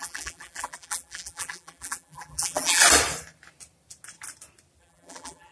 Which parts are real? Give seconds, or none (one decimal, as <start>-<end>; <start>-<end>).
2.8-4.8